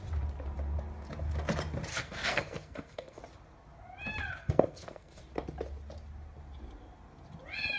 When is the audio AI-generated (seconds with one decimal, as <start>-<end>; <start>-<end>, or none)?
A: 1.9-3.2; 4.4-5.2